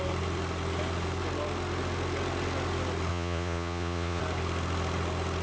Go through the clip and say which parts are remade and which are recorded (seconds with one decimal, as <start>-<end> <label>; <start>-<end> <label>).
0.0-3.1 recorded; 3.1-4.2 remade; 4.2-5.4 recorded